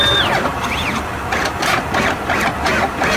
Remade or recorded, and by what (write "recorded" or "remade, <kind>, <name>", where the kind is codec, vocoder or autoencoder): recorded